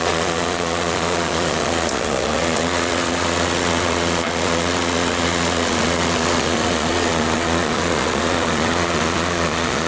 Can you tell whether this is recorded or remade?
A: remade